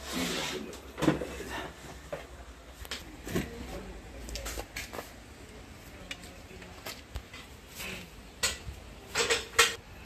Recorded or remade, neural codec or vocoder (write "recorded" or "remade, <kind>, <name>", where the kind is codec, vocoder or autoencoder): recorded